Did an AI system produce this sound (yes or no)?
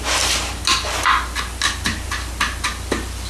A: no